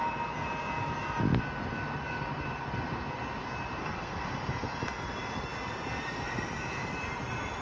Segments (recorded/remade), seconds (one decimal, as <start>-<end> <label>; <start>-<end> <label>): 0.0-3.8 recorded; 3.8-4.4 remade; 4.4-7.6 recorded